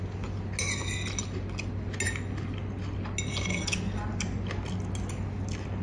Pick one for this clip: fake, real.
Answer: real